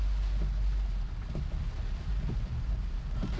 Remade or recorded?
recorded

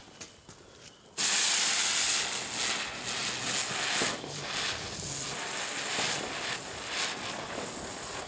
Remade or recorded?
recorded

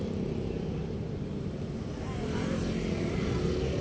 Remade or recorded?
recorded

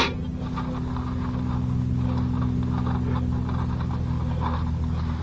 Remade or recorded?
recorded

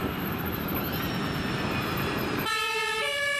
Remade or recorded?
remade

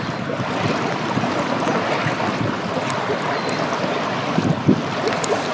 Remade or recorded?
recorded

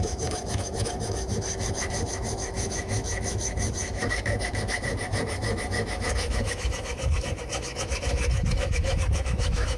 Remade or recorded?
remade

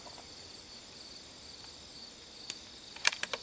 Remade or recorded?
recorded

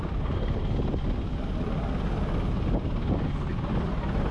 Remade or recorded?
recorded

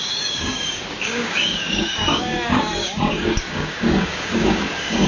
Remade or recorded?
remade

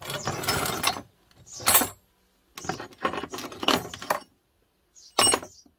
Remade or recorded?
recorded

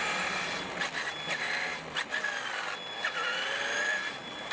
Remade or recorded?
recorded